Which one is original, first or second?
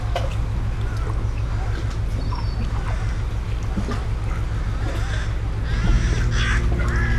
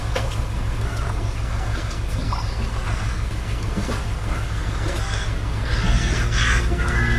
first